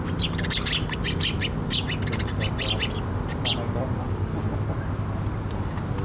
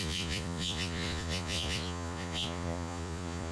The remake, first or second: second